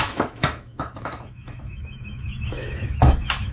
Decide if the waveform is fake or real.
fake